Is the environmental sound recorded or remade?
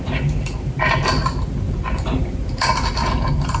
recorded